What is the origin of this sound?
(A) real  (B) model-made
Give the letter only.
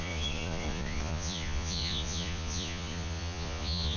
B